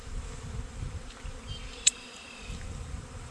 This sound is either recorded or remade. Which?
remade